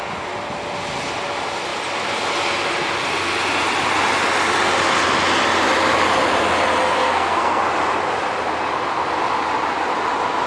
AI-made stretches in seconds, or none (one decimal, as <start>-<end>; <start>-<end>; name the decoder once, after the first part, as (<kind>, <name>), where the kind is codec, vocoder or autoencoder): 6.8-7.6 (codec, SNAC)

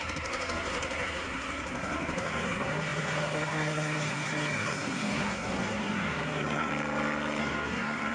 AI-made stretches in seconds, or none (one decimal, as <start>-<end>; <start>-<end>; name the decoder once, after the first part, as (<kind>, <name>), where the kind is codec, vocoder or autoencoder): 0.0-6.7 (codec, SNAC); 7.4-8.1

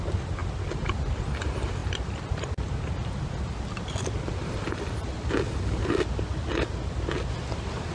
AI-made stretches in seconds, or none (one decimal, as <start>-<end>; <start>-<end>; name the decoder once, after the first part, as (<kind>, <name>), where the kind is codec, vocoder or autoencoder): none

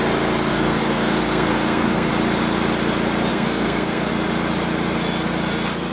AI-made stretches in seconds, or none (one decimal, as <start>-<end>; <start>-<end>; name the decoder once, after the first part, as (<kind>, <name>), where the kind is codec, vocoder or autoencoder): 0.5-2.1 (codec, SNAC); 3.3-4.1

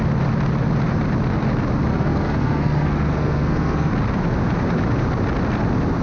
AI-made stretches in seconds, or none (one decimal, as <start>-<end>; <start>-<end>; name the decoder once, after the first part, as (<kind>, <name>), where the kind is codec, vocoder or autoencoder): 1.9-3.9 (codec, SNAC)

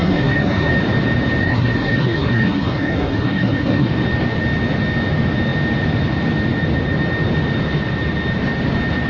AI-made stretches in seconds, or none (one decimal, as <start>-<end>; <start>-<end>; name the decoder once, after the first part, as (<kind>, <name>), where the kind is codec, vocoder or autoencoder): 0.0-0.7 (codec, SNAC); 1.4-3.9

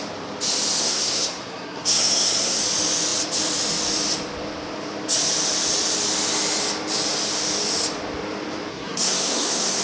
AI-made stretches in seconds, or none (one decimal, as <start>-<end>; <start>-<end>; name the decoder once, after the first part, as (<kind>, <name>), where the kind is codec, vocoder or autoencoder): 0.8-2.6 (codec, SNAC); 8.7-9.8